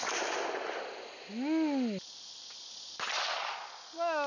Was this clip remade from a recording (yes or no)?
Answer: no